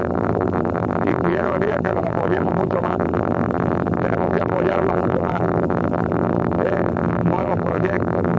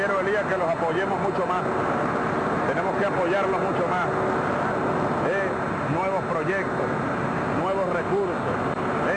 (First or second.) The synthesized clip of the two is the first